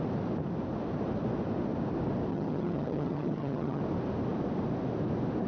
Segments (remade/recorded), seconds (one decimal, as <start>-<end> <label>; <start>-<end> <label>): 0.0-2.3 recorded; 2.3-3.8 remade; 3.8-5.5 recorded